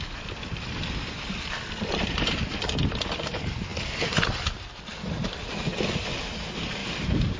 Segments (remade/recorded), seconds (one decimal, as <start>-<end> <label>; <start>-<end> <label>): 0.0-6.8 recorded; 6.8-7.4 remade